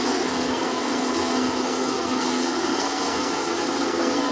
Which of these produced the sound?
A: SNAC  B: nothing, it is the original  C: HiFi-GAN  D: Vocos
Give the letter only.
A